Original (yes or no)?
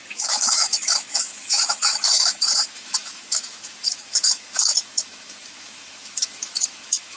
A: no